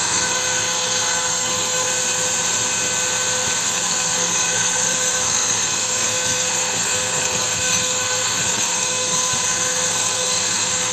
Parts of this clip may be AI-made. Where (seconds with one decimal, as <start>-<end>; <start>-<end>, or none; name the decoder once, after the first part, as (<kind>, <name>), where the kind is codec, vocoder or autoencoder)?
0.0-1.9 (codec, SNAC); 3.6-10.9